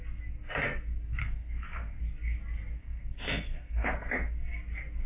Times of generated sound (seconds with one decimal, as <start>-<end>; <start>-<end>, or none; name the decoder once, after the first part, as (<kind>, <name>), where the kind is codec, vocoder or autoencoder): 1.2-2.0 (codec, SNAC); 2.8-4.1